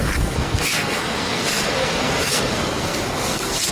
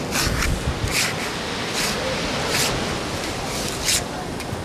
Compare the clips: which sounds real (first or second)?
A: second